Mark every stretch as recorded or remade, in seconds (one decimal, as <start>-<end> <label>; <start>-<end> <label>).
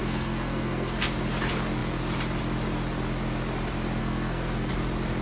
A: 0.0-1.0 remade; 1.0-4.0 recorded; 4.0-4.7 remade; 4.7-5.2 recorded